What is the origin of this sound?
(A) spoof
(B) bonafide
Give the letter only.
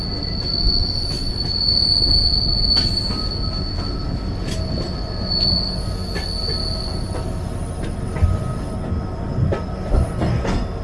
B